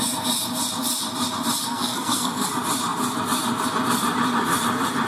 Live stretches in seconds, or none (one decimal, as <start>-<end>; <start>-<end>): 0.0-1.6; 2.5-5.1